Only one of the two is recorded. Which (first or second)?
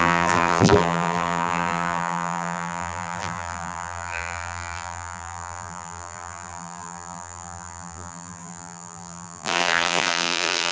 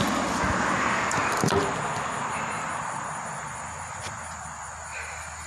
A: second